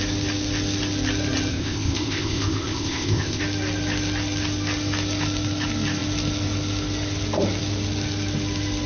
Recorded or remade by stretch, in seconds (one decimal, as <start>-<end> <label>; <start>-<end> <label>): 0.0-1.5 recorded; 1.5-3.4 remade; 3.4-8.9 recorded